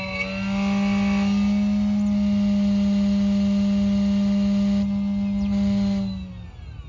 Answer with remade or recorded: recorded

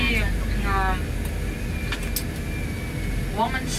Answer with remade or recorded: recorded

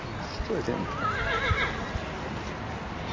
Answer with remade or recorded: recorded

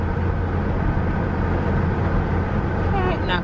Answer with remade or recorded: recorded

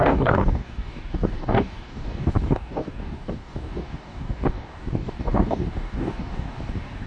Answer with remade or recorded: remade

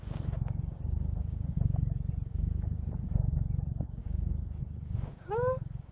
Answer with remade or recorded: remade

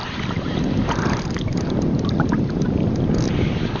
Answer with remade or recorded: recorded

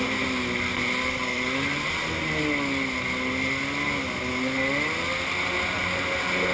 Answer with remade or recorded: recorded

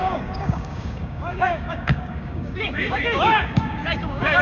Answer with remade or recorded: remade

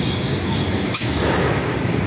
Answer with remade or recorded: remade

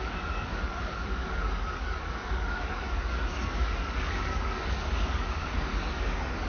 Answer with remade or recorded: remade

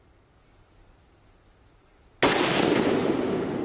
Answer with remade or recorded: recorded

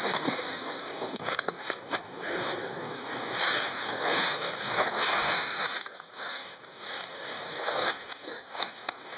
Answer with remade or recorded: remade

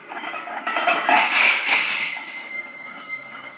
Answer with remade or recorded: remade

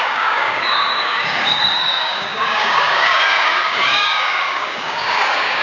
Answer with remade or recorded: remade